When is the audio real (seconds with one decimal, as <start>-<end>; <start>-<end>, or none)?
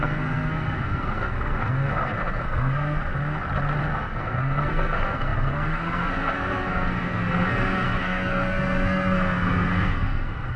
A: 3.1-3.8